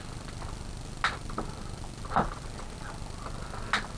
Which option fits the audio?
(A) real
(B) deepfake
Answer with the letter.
A